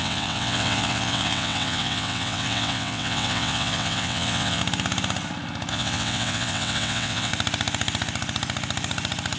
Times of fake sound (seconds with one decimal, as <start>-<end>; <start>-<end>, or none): 0.0-4.6; 5.7-7.3